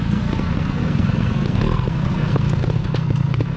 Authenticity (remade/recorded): remade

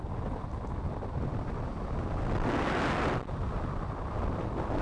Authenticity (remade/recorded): recorded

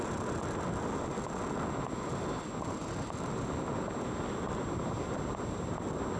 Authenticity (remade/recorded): recorded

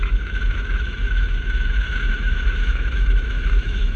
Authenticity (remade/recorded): remade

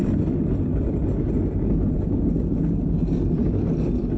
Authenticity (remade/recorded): recorded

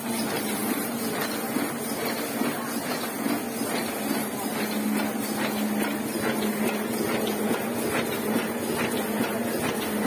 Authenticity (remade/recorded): recorded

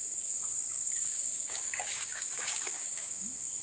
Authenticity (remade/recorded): remade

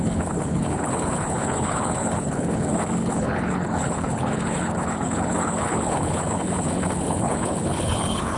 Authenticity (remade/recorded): remade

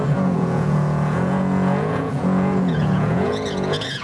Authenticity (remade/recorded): remade